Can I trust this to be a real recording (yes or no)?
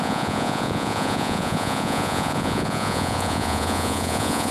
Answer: no